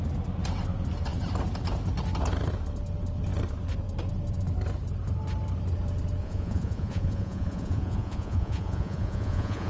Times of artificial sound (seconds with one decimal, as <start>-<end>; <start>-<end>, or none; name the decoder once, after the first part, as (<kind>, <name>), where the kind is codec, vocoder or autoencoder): 6.2-9.7 (vocoder, Vocos)